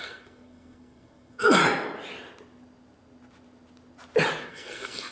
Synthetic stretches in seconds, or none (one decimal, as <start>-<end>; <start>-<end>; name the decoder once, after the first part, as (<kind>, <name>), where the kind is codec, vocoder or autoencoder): 0.0-1.6 (codec, SNAC); 4.5-5.1